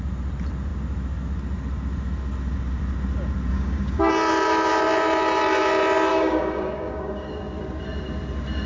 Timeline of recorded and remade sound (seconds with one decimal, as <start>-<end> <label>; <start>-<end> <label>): 0.0-3.5 recorded; 3.5-4.1 remade; 4.1-6.1 recorded; 6.1-7.3 remade; 7.3-8.7 recorded